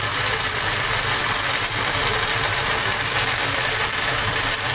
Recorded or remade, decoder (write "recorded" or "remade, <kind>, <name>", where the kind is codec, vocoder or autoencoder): recorded